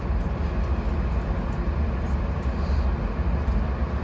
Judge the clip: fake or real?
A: real